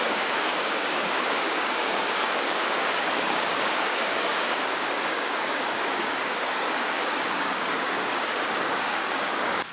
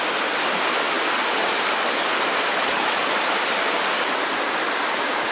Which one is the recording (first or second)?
second